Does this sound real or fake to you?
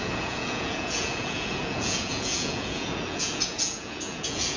fake